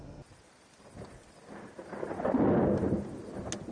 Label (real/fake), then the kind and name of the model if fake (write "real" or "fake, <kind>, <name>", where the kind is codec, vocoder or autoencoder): real